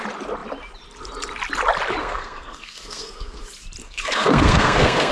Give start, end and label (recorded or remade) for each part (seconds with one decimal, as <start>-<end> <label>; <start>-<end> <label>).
0.0-2.0 recorded; 2.0-3.4 remade; 3.4-3.8 recorded; 3.8-5.1 remade